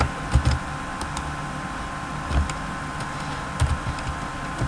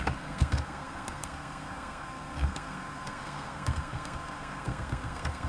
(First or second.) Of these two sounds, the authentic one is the first